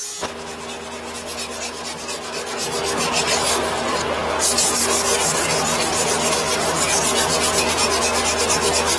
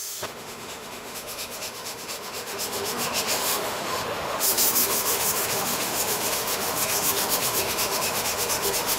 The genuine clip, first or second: first